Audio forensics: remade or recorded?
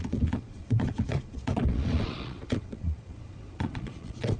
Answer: remade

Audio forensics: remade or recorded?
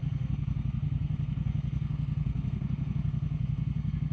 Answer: remade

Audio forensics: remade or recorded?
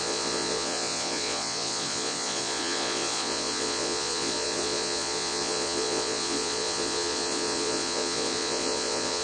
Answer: remade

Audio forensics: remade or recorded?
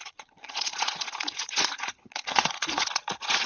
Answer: remade